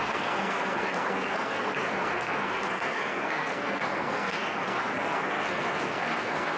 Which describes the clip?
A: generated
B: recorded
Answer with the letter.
A